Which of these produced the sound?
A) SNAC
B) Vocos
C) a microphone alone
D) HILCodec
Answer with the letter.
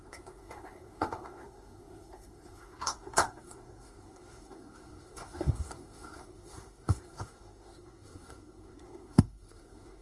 A